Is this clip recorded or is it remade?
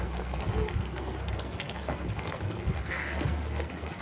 remade